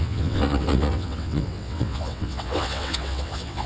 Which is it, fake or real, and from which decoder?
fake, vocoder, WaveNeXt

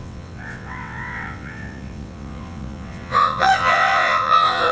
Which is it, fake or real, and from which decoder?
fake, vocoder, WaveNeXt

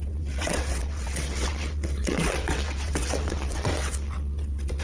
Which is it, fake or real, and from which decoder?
fake, vocoder, WaveNeXt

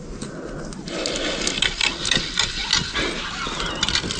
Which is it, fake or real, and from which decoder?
real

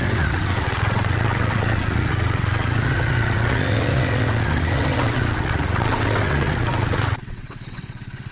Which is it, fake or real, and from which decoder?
fake, vocoder, WaveNeXt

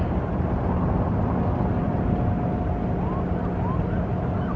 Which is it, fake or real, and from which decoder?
real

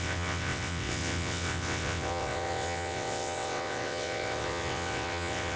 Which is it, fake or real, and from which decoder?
fake, vocoder, WaveNeXt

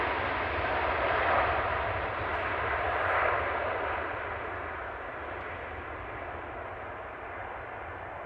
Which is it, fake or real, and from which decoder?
real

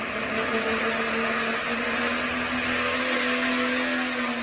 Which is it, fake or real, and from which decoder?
real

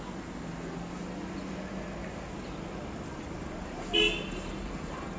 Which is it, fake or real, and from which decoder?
real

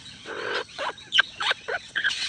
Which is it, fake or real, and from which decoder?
fake, vocoder, WaveNeXt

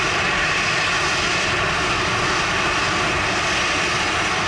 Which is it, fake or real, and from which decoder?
real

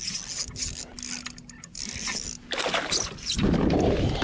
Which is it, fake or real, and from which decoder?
real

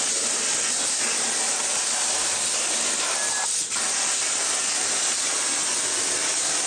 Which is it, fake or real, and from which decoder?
real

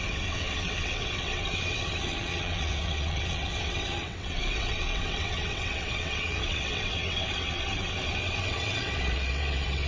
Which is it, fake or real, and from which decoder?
fake, vocoder, WaveNeXt